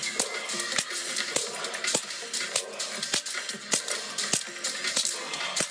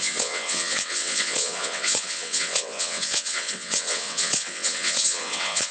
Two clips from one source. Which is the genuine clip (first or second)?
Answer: first